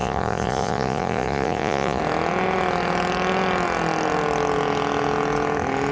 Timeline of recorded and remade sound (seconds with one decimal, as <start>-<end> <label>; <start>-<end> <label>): 0.0-2.0 remade; 2.0-5.9 recorded